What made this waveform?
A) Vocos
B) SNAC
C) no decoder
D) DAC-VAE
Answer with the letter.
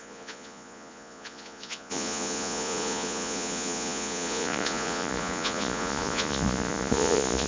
A